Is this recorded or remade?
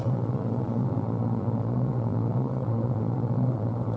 remade